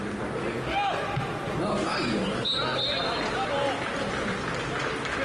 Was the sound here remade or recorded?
recorded